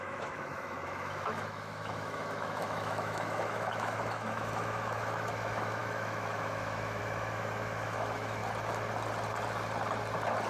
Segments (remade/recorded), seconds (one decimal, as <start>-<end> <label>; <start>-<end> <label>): 0.0-8.4 remade; 8.4-10.5 recorded